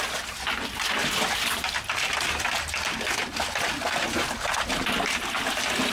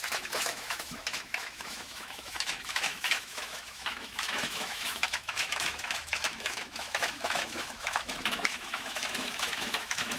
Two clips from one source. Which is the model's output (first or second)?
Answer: second